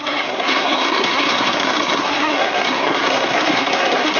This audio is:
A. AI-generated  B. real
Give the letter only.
A